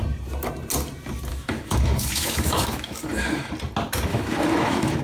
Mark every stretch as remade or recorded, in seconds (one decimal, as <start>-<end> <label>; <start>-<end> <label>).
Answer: 0.0-1.3 recorded; 1.3-3.5 remade; 3.5-4.1 recorded; 4.1-5.0 remade